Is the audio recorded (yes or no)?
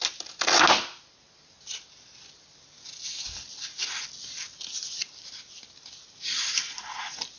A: yes